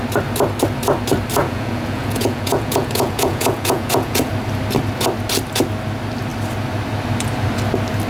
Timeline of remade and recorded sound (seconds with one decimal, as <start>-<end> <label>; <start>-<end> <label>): 0.0-1.4 recorded; 1.4-4.3 remade; 4.3-8.1 recorded